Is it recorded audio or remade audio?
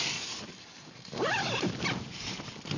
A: recorded